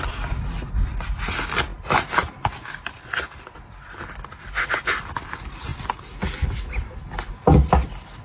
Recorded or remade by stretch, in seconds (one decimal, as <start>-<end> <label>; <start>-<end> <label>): 0.0-8.2 recorded